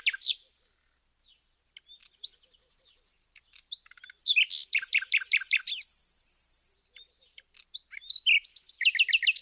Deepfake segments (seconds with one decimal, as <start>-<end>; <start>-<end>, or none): none